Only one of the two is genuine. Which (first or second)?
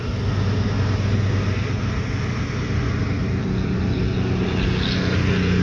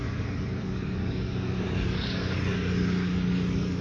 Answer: first